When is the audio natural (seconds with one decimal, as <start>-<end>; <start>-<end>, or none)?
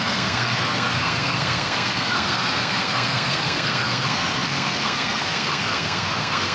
none